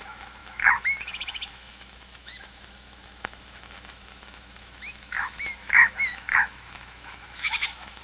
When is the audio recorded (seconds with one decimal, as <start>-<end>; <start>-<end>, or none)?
none